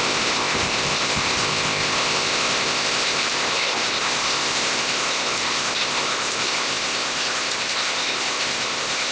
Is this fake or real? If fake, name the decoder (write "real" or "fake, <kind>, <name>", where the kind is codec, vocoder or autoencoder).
fake, codec, ZipCodec